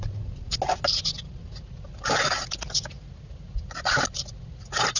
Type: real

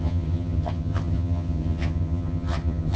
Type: fake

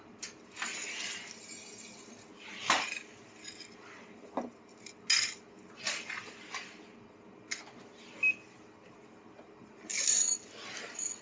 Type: real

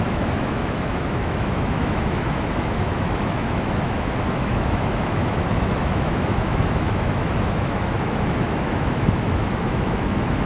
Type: fake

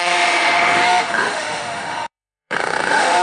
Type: fake